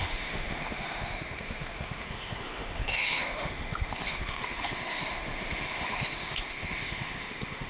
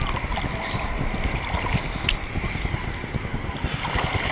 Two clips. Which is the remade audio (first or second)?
first